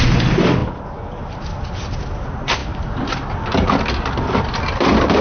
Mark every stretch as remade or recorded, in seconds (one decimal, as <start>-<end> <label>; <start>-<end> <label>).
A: 0.0-5.2 recorded